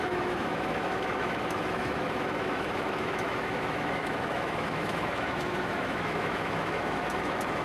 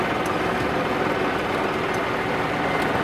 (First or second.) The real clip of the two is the second